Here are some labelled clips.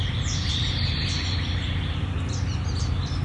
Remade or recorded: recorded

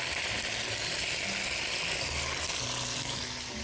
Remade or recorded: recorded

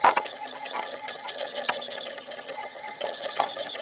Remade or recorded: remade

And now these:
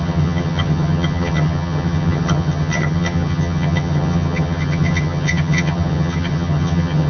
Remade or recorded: remade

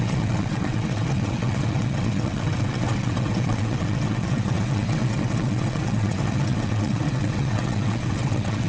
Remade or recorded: remade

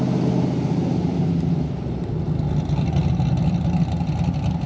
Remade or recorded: recorded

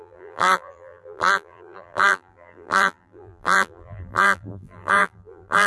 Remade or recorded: remade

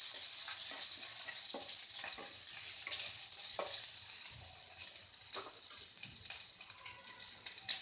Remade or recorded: recorded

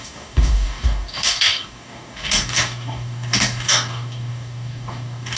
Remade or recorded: remade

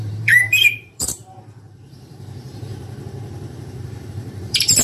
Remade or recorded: remade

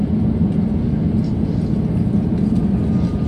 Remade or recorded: recorded